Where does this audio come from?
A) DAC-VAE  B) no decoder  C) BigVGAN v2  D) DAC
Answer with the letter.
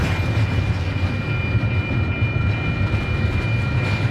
B